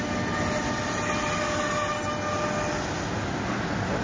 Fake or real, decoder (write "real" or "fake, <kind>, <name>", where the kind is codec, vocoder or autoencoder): real